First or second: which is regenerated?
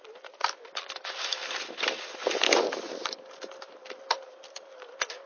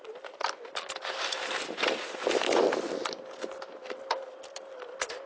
first